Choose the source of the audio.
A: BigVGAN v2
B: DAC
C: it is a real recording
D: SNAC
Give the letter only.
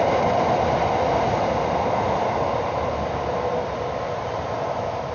C